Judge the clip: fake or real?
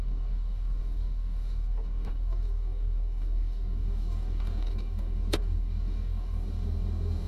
fake